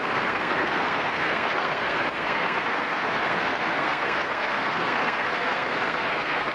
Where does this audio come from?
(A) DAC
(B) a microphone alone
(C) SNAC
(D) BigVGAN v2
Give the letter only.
C